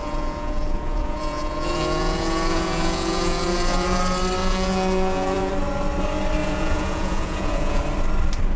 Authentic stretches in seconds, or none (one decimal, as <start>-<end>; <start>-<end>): 4.0-4.4; 5.5-6.4; 7.8-8.6